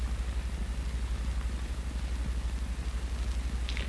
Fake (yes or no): no